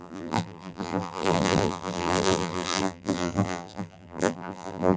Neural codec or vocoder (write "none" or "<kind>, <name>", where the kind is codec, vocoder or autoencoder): vocoder, BigVGAN v2